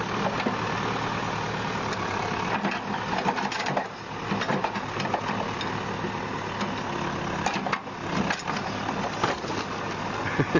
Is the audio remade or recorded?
recorded